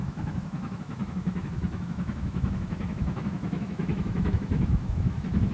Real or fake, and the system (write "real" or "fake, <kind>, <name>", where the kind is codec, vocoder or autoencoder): fake, autoencoder, DAC-VAE